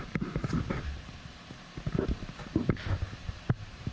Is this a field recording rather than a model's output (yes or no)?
no